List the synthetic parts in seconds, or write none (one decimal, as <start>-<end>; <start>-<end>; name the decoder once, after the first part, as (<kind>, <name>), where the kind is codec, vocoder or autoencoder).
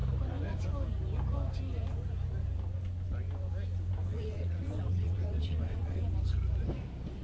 4.1-6.0 (vocoder, WaveNeXt)